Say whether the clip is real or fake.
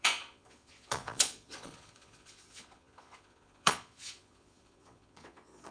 fake